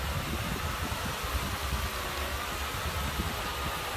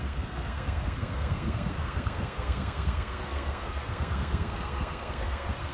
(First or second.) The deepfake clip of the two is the second